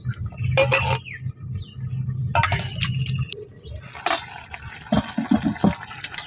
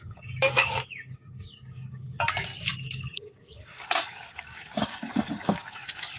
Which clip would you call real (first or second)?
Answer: first